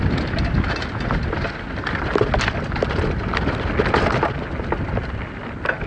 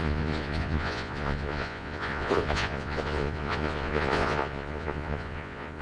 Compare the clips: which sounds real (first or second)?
first